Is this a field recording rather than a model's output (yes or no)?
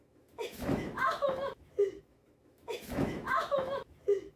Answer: no